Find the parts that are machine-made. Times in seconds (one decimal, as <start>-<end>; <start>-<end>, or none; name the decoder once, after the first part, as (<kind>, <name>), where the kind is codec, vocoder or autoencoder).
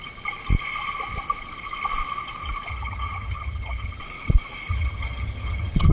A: 2.7-4.0 (vocoder, HiFi-GAN); 4.7-5.9